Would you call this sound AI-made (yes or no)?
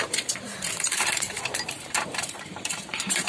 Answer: yes